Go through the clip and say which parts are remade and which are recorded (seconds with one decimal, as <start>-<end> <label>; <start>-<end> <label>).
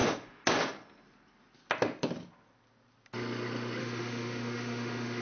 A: 0.0-3.8 recorded; 3.8-5.2 remade